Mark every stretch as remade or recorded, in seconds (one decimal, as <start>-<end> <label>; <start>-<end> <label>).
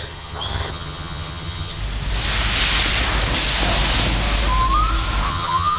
0.0-1.8 remade; 1.8-5.3 recorded; 5.3-5.8 remade